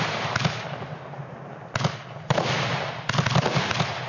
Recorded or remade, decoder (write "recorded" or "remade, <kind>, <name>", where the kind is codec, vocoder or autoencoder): recorded